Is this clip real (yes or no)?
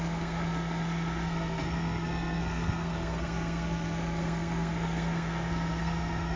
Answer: no